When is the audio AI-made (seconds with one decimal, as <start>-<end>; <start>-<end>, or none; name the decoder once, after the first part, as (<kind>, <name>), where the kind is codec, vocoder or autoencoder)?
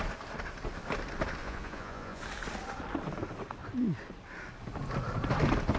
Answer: 1.4-2.2 (vocoder, Vocos)